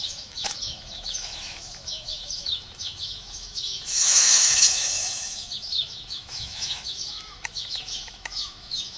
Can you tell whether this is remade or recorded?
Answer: remade